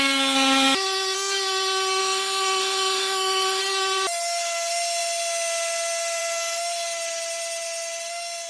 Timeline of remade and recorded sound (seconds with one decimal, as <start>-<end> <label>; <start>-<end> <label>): 0.0-2.0 recorded; 2.0-3.6 remade; 3.6-8.5 recorded